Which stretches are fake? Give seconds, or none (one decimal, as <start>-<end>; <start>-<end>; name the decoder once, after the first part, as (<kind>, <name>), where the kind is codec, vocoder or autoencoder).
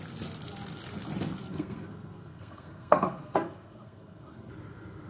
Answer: 1.4-4.5 (codec, SNAC)